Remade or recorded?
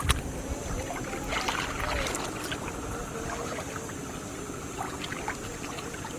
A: recorded